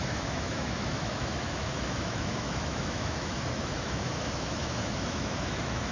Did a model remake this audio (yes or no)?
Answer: yes